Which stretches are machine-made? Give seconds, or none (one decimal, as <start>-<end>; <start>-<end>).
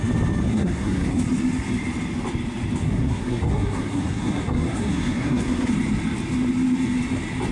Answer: 0.5-1.2; 2.8-5.7